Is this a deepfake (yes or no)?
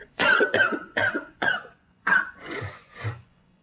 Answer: yes